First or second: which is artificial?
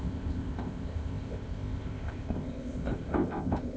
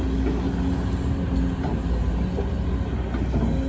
first